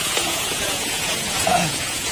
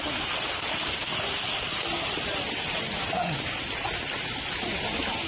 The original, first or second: second